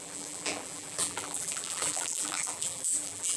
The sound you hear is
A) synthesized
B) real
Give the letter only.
A